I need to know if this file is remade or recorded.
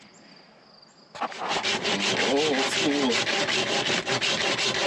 recorded